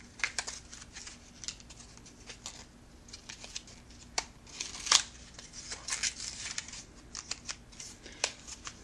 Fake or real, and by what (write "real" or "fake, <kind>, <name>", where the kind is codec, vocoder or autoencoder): real